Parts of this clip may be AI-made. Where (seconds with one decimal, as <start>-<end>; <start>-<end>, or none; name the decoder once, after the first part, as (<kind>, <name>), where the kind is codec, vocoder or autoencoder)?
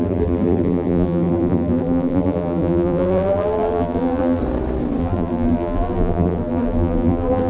0.0-4.4 (vocoder, BigVGAN v2); 5.0-7.5